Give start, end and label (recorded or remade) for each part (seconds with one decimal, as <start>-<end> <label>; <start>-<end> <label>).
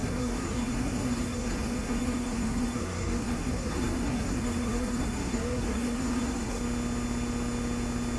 0.0-6.6 remade; 6.6-8.2 recorded